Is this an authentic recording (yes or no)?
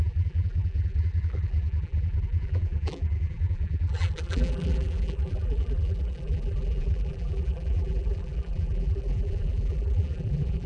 no